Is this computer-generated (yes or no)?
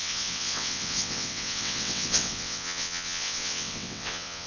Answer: yes